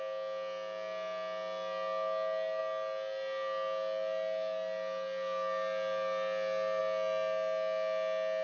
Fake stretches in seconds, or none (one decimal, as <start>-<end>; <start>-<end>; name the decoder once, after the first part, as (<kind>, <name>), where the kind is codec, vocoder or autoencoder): none